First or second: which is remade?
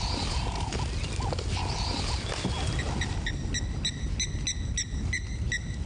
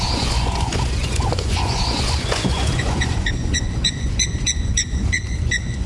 second